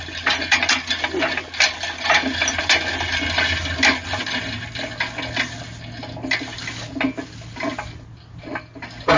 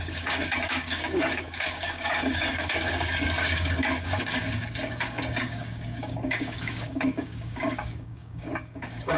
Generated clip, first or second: second